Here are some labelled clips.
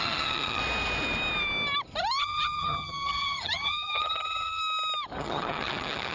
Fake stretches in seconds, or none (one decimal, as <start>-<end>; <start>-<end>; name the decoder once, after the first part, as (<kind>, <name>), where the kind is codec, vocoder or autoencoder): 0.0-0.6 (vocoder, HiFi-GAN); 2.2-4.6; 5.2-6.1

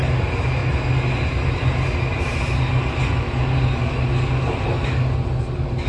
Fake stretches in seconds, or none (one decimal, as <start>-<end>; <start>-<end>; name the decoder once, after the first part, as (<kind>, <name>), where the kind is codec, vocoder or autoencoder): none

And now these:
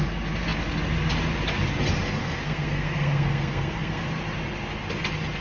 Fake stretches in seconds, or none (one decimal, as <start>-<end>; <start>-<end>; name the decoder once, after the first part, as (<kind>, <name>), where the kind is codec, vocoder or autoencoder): 2.2-4.0 (codec, SNAC)

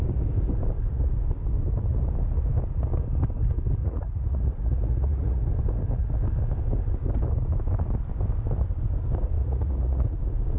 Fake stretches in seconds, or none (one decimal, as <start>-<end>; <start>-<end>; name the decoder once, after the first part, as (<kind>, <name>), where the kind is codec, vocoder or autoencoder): 3.8-5.4 (vocoder, Vocos); 9.4-10.2

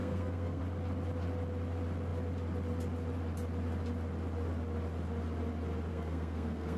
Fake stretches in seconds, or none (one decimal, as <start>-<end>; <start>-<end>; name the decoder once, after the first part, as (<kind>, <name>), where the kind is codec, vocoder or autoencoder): 0.0-0.6 (codec, SNAC); 5.9-6.8

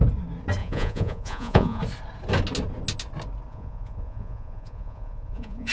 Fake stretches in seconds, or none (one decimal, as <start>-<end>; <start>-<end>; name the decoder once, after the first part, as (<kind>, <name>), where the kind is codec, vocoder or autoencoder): 0.6-1.8 (vocoder, Vocos); 3.5-5.7

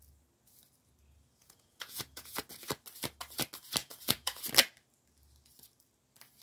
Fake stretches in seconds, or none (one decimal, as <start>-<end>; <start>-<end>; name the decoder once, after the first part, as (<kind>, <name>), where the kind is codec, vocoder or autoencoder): 1.4-2.4 (vocoder, Vocos); 3.8-4.4